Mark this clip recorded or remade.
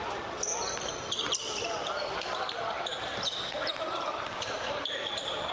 remade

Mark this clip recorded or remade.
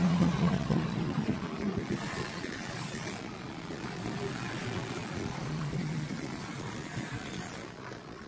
remade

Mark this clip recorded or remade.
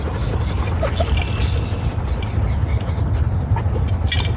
recorded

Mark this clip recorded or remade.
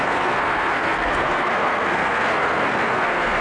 remade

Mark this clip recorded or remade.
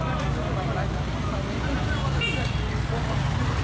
recorded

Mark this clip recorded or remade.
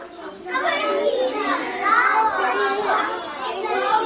recorded